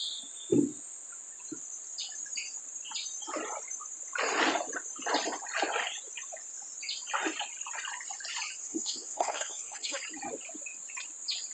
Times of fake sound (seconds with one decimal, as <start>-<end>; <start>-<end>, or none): 8.6-10.0

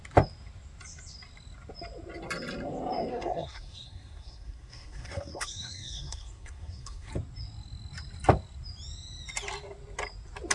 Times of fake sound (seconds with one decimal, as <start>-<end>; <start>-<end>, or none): 3.1-7.1

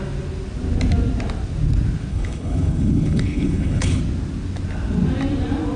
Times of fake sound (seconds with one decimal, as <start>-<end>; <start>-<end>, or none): 2.1-4.0

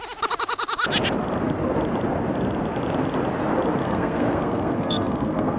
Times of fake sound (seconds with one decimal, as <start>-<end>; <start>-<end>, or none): 3.8-5.6

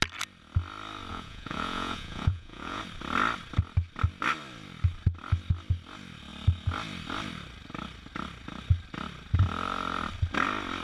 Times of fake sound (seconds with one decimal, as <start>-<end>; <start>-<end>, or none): 1.1-2.8

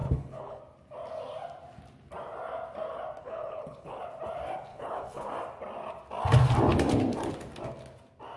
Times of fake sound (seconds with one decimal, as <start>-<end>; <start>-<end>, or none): 0.0-0.6; 3.2-4.0; 4.7-5.3

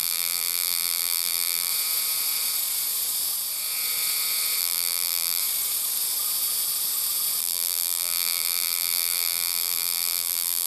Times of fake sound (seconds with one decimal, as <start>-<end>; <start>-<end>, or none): 0.0-1.7; 4.6-5.4; 7.4-10.7